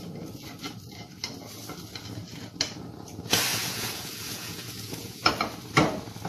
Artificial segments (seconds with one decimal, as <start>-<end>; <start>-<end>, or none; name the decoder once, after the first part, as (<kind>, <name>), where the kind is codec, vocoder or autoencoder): 3.5-5.3 (vocoder, Vocos)